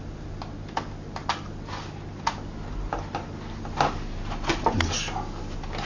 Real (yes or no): yes